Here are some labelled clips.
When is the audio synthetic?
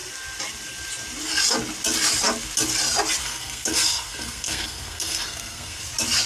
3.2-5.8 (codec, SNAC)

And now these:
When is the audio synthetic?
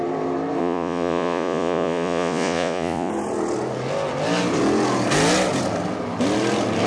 0.6-3.1 (vocoder, Vocos)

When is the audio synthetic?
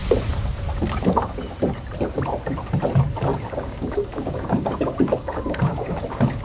3.3-6.4 (codec, DAC)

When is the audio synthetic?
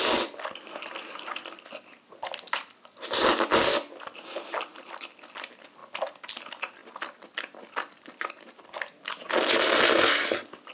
none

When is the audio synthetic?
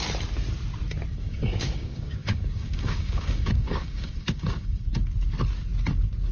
1.1-4.9 (codec, DAC)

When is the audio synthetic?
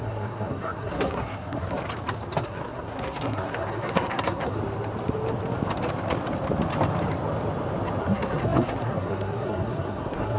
0.0-1.8 (codec, SNAC); 2.4-4.6; 8.0-10.4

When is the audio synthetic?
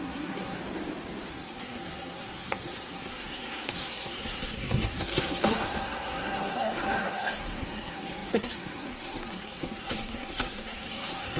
0.0-0.6 (codec, SNAC); 1.3-11.4